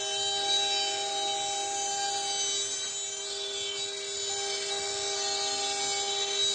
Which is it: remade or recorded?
recorded